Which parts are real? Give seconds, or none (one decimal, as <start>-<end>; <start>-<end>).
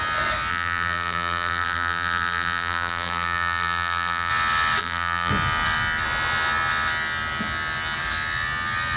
0.0-0.5; 4.3-4.8; 5.3-9.0